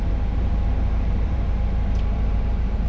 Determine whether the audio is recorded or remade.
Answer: remade